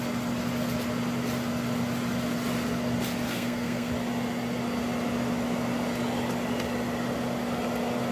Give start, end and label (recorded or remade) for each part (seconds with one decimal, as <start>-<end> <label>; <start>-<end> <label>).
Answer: 0.0-3.3 recorded; 3.3-3.9 remade; 3.9-8.1 recorded